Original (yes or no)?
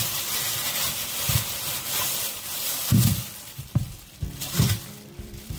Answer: no